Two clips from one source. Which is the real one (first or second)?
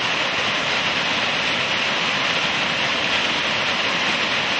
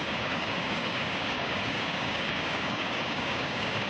first